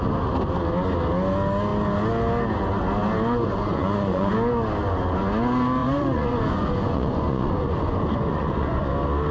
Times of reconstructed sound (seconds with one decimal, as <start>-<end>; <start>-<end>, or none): 3.5-4.3; 5.8-8.9